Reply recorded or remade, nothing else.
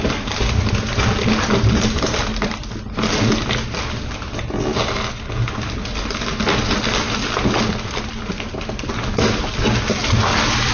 recorded